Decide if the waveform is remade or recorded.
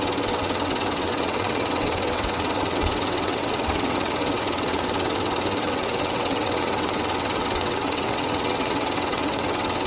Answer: remade